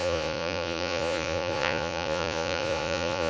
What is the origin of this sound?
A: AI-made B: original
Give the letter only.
A